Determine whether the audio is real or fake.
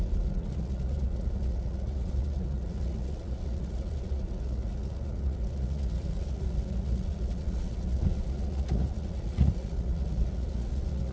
fake